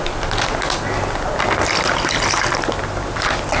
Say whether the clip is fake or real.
real